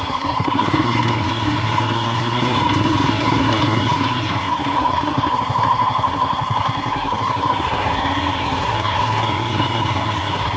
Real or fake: fake